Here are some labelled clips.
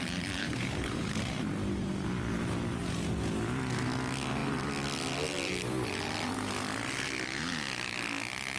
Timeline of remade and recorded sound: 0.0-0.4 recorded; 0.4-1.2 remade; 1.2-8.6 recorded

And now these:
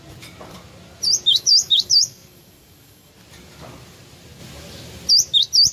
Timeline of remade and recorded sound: 0.0-1.3 recorded; 1.3-3.1 remade; 3.1-5.7 recorded

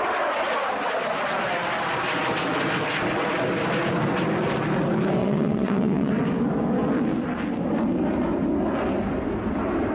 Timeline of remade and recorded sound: 0.0-5.2 recorded; 5.2-6.1 remade; 6.1-9.9 recorded

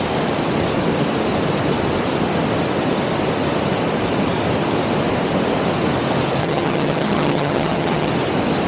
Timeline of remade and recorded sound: 0.0-6.4 recorded; 6.4-8.1 remade; 8.1-8.7 recorded

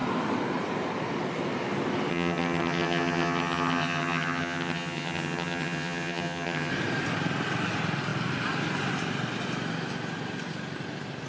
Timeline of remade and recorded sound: 0.0-2.1 recorded; 2.1-6.7 remade; 6.7-11.3 recorded

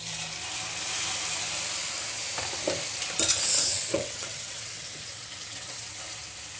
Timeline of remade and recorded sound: 0.0-3.7 recorded; 3.7-6.0 remade; 6.0-6.6 recorded

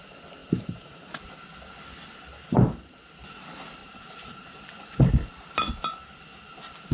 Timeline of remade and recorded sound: 0.0-0.4 recorded; 0.4-1.4 remade; 1.4-2.3 recorded; 2.3-3.0 remade; 3.0-3.8 recorded; 3.8-5.1 remade; 5.1-6.9 recorded

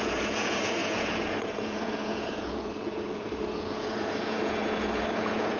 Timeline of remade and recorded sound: 0.0-5.6 remade